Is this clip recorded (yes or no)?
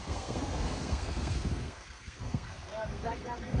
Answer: no